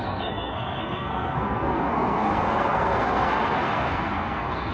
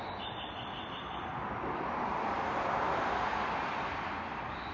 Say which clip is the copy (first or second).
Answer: first